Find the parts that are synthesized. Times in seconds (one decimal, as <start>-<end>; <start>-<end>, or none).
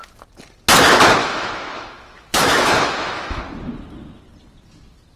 1.2-3.4